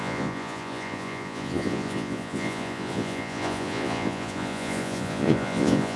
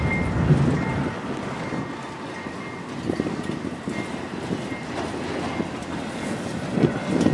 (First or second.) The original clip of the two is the second